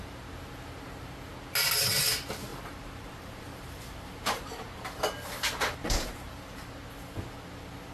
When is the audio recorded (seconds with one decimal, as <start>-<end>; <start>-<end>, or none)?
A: 0.0-2.5; 4.5-5.8; 6.5-7.9

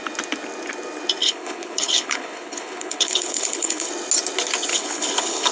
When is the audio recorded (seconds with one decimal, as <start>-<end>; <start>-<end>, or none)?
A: 0.0-1.2; 3.9-4.7

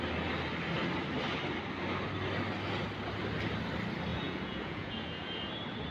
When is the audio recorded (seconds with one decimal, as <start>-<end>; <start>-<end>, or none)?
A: 0.0-4.1; 5.5-5.9